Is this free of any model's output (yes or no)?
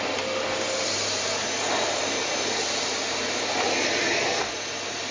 yes